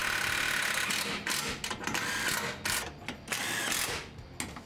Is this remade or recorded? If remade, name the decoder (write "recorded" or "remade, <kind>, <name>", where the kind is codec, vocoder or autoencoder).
recorded